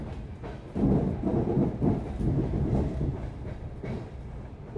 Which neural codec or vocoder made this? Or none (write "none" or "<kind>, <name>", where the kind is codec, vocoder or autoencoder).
none